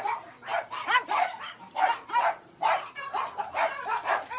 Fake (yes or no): yes